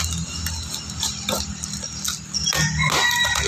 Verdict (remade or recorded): recorded